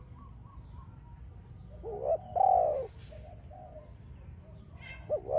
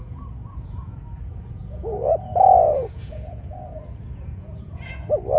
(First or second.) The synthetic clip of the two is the second